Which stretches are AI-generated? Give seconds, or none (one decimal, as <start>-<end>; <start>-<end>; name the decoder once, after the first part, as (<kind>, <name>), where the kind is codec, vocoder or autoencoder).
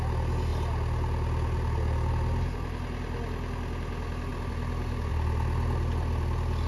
none